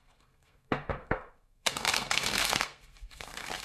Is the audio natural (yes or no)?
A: no